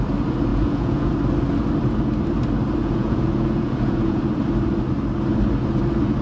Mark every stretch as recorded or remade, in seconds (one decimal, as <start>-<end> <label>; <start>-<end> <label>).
0.0-0.5 recorded; 0.5-1.1 remade; 1.1-2.8 recorded; 2.8-4.2 remade; 4.2-6.2 recorded